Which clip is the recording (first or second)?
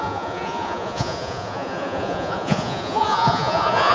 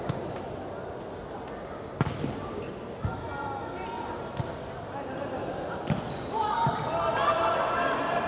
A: second